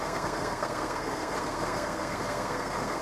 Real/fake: fake